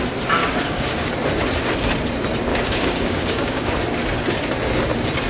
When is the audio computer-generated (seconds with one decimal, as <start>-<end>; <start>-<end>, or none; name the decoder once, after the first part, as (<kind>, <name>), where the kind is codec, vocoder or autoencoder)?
0.4-1.1 (codec, DAC); 2.5-3.7